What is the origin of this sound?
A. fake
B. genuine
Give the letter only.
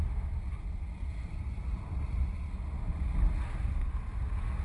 B